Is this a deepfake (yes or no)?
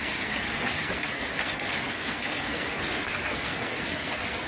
yes